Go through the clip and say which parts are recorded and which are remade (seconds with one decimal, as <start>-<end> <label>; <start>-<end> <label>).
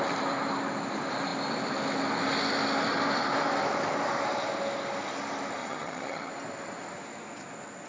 0.0-5.6 recorded; 5.6-6.3 remade; 6.3-7.9 recorded